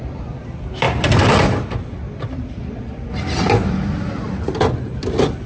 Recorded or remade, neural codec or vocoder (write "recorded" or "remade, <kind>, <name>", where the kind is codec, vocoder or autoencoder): remade, vocoder, BigVGAN v2